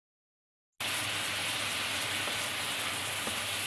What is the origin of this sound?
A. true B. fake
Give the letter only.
A